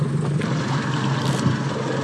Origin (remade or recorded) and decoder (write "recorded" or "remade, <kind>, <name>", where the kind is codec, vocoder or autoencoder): recorded